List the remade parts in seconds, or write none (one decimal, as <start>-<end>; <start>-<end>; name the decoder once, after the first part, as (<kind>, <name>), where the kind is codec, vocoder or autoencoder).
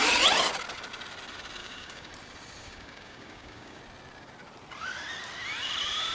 1.6-2.1 (codec, DAC); 2.6-3.8